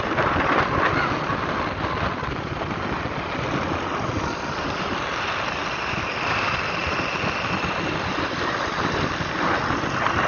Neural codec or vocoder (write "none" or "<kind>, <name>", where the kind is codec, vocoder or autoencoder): none